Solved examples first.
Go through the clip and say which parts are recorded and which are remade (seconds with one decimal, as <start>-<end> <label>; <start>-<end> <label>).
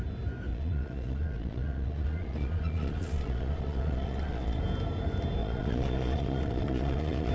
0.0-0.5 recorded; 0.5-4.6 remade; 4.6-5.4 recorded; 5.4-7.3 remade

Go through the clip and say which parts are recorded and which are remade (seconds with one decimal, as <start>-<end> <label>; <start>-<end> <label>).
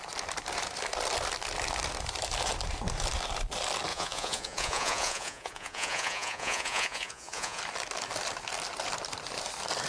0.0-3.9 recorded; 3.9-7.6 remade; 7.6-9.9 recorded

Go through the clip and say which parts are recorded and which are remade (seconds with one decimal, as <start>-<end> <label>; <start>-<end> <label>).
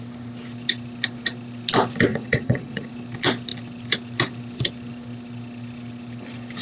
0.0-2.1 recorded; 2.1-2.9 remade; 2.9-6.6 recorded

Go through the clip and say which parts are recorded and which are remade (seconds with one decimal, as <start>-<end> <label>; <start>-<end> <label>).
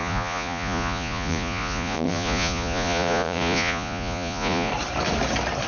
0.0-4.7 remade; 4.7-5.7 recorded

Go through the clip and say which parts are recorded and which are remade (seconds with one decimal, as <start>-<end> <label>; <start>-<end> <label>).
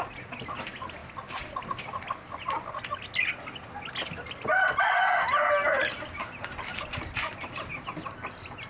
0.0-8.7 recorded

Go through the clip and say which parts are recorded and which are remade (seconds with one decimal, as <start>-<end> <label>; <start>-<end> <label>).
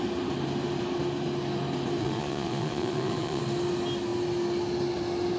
0.0-2.0 recorded; 2.0-3.4 remade; 3.4-5.4 recorded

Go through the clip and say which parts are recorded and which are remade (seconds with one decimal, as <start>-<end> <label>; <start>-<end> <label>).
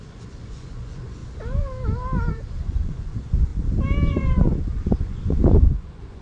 0.0-1.2 remade; 1.2-2.3 recorded; 2.3-3.5 remade; 3.5-4.1 recorded; 4.1-6.2 remade